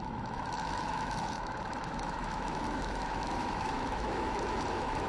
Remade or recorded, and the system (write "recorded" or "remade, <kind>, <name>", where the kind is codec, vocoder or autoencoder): remade, autoencoder, DAC-VAE